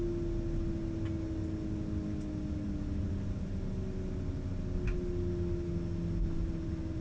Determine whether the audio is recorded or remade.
recorded